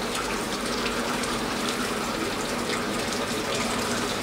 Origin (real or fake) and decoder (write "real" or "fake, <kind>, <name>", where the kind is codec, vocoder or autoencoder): fake, vocoder, BigVGAN v2